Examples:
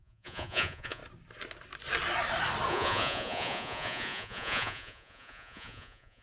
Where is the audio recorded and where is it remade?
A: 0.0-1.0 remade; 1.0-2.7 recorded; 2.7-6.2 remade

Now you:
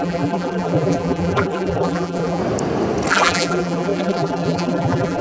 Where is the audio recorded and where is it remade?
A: 0.0-2.4 remade; 2.4-3.1 recorded; 3.1-5.2 remade

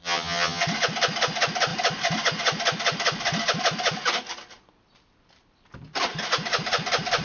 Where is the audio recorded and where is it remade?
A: 0.0-0.6 remade; 0.6-7.2 recorded

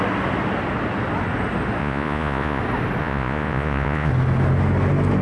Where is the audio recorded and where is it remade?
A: 0.0-1.8 recorded; 1.8-2.6 remade; 2.6-3.0 recorded; 3.0-4.1 remade; 4.1-5.2 recorded

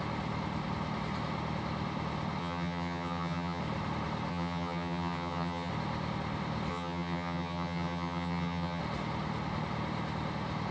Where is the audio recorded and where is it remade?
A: 0.0-2.4 recorded; 2.4-3.6 remade; 3.6-4.3 recorded; 4.3-5.7 remade; 5.7-6.7 recorded; 6.7-8.8 remade; 8.8-10.7 recorded

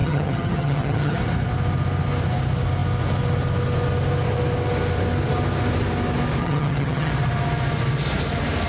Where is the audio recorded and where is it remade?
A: 0.0-1.2 remade; 1.2-6.4 recorded; 6.4-7.1 remade; 7.1-8.7 recorded

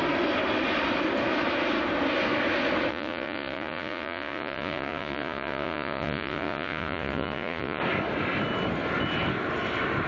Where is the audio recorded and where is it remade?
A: 0.0-2.9 recorded; 2.9-7.8 remade; 7.8-10.1 recorded